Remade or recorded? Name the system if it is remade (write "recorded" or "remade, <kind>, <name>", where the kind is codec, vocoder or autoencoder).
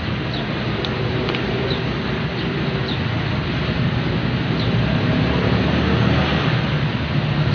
recorded